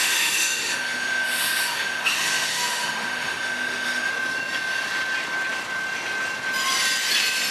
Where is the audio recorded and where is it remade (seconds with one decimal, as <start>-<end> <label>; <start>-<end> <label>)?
0.0-4.1 remade; 4.1-7.5 recorded